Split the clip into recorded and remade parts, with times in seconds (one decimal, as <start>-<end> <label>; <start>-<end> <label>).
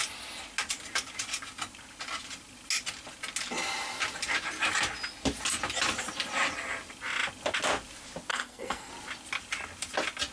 0.0-8.3 recorded; 8.3-8.9 remade; 8.9-10.3 recorded